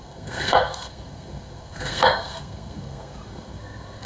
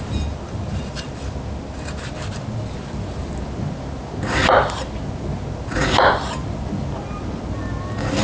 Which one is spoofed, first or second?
first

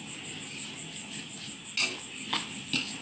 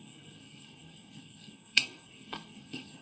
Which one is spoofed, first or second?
second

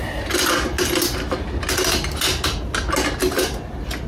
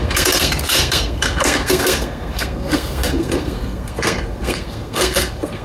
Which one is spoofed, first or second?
second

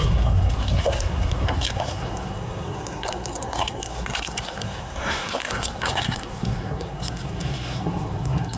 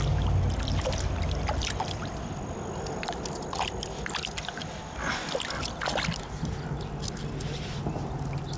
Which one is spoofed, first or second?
first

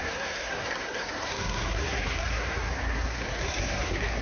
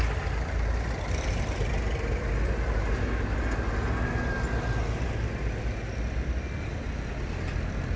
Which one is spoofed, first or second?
first